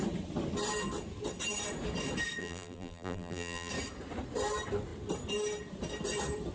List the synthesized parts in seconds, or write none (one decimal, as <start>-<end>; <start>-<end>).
2.4-3.7